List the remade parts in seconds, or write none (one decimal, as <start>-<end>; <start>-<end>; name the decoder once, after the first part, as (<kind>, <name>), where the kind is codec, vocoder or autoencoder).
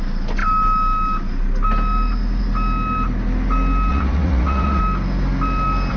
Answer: 3.9-4.8 (vocoder, Vocos)